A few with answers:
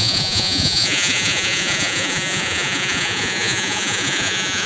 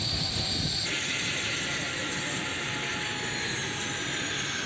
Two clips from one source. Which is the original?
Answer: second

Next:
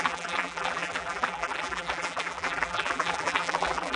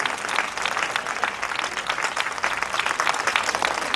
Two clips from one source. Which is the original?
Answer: second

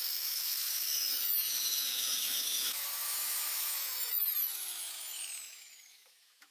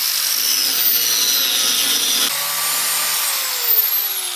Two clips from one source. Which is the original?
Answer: second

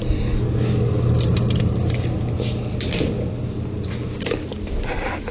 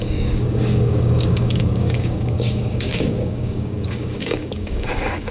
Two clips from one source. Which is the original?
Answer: first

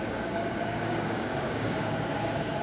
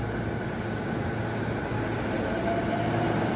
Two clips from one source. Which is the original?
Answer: second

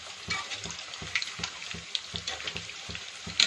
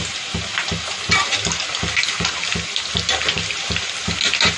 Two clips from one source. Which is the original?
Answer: second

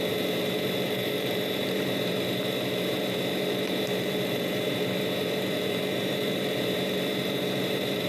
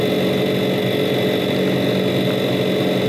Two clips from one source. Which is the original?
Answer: second